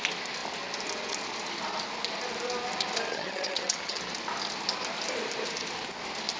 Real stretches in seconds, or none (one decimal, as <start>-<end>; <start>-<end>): 0.0-3.1; 4.0-6.4